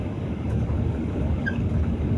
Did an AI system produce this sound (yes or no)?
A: yes